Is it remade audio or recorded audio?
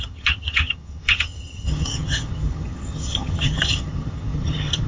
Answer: remade